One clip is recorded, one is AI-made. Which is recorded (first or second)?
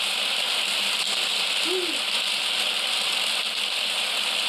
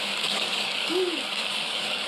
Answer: first